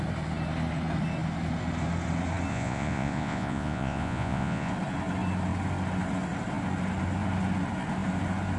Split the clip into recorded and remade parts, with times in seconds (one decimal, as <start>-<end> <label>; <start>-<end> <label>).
0.0-2.5 recorded; 2.5-4.7 remade; 4.7-8.6 recorded

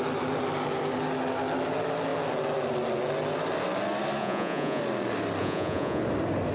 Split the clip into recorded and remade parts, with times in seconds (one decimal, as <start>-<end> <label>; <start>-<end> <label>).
0.0-4.2 recorded; 4.2-4.8 remade; 4.8-5.4 recorded; 5.4-6.0 remade; 6.0-6.5 recorded

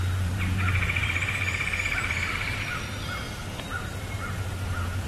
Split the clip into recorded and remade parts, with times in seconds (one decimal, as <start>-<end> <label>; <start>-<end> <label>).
0.0-2.6 remade; 2.6-3.8 recorded; 3.8-5.1 remade

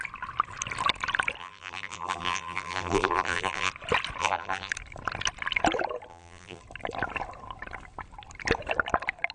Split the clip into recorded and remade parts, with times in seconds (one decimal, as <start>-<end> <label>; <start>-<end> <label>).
0.0-1.4 recorded; 1.4-3.7 remade; 3.7-4.2 recorded; 4.2-4.7 remade; 4.7-6.1 recorded; 6.1-6.6 remade; 6.6-9.3 recorded

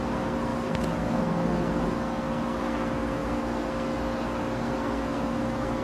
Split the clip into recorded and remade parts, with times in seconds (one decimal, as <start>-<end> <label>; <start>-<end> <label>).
0.0-5.8 remade